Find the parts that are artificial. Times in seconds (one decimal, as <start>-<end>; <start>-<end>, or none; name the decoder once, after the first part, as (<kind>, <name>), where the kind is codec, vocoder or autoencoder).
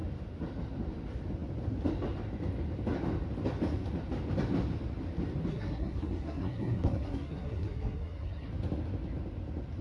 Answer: 5.5-8.5 (codec, SNAC)